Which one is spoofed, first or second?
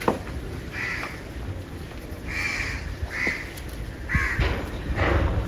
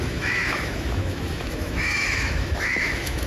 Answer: second